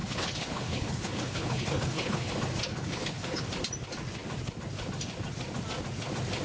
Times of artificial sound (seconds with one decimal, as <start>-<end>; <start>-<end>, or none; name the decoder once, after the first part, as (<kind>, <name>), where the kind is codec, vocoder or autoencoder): 0.0-2.3 (codec, HILCodec); 2.7-3.4